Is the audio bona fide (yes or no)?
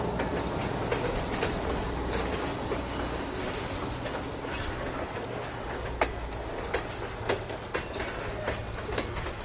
yes